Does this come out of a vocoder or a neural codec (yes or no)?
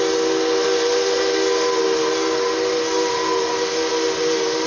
no